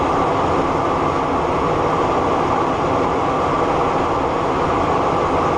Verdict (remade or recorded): recorded